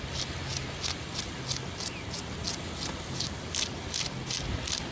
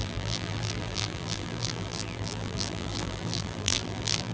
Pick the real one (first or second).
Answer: first